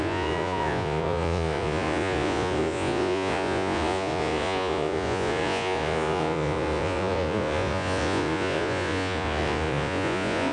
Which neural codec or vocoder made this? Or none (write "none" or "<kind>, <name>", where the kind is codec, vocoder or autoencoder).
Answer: vocoder, Vocos